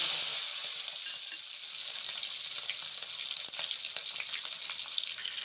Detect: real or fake real